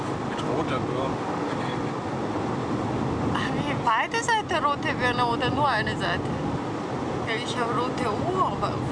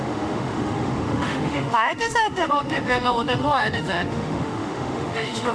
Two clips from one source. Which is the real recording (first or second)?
first